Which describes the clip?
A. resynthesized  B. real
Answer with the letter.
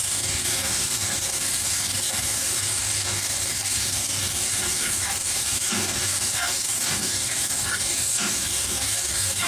A